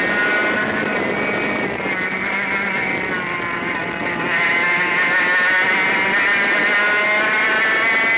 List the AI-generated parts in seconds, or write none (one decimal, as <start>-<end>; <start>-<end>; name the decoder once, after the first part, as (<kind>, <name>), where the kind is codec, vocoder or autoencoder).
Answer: none